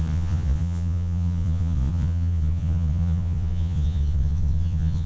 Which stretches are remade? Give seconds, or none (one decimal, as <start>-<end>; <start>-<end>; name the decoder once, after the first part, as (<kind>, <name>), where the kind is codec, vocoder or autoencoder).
0.0-5.1 (vocoder, Vocos)